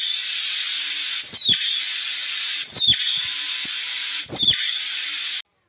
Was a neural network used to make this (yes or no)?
no